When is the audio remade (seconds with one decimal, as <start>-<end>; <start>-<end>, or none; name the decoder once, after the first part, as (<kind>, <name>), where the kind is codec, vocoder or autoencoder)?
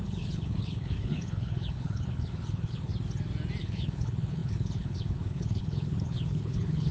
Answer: 0.0-2.9 (codec, HILCodec); 3.6-6.9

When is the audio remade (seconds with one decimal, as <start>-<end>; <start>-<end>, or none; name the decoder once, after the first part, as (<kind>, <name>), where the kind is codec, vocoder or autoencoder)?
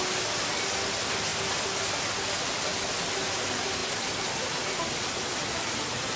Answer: none